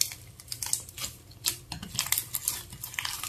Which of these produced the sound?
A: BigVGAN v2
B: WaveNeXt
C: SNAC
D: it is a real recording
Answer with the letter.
D